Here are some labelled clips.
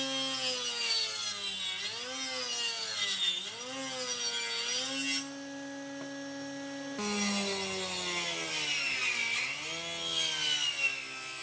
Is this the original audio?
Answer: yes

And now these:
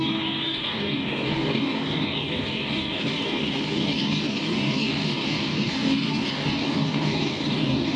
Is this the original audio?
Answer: no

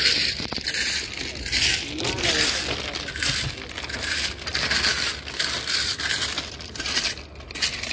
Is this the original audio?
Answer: yes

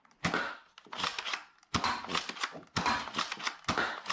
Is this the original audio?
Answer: yes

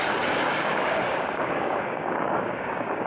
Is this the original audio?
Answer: no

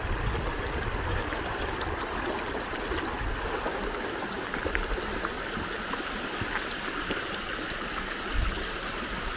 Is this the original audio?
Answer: yes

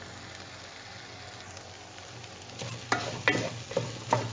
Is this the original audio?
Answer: yes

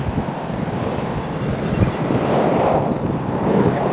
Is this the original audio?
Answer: yes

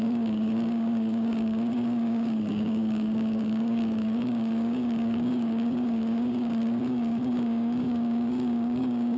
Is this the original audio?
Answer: no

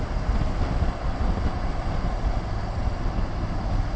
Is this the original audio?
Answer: yes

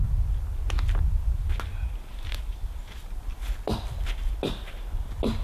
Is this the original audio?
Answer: yes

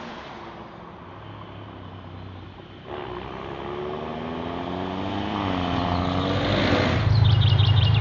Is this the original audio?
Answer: yes